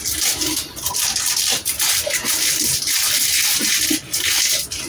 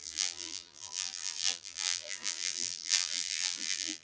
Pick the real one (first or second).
first